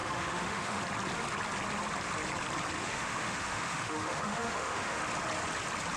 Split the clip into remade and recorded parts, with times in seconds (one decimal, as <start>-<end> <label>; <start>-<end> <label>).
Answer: 0.0-0.8 remade; 0.8-2.8 recorded; 2.8-5.0 remade; 5.0-6.0 recorded